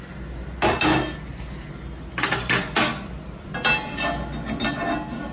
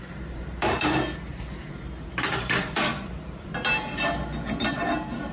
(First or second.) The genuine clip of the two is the first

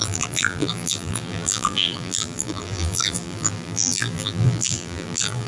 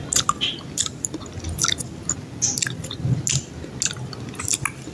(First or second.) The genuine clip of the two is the second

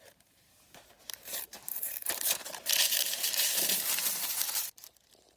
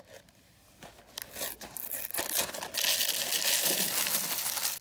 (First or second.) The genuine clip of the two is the second